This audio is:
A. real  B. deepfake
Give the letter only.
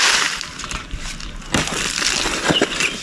A